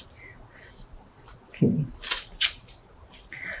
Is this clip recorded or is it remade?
recorded